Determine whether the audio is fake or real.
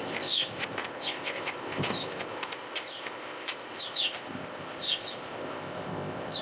fake